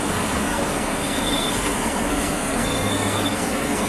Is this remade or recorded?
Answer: remade